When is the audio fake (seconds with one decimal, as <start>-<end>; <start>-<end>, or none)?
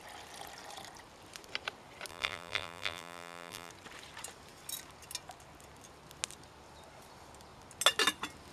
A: 2.1-3.7